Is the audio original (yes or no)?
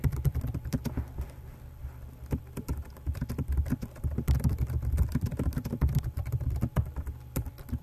no